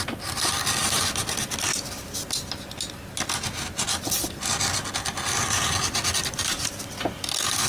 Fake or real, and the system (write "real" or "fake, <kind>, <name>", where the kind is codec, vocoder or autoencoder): real